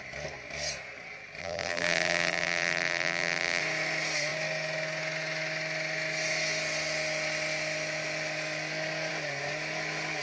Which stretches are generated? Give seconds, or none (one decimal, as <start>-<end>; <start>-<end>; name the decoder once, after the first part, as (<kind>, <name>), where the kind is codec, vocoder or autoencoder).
1.4-3.6 (vocoder, BigVGAN v2)

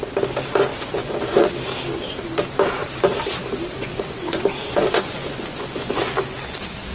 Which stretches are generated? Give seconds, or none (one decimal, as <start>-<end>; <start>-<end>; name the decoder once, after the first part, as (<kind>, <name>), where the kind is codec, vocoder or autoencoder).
0.7-1.5 (vocoder, Vocos); 3.8-6.0

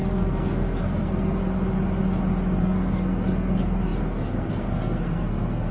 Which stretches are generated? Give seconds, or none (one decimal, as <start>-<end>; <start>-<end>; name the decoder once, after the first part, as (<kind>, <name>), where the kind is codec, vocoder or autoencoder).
0.0-1.4 (codec, SNAC); 2.6-5.7

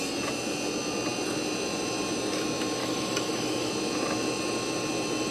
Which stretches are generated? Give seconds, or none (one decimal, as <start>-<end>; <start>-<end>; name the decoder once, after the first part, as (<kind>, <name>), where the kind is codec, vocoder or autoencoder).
2.8-3.7 (autoencoder, DAC-VAE)

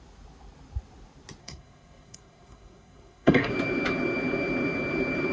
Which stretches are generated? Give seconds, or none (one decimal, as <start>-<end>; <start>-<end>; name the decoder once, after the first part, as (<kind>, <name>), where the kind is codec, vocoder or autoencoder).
1.4-3.5 (codec, SNAC)